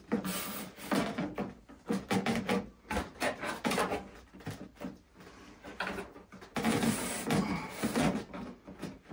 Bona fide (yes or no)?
yes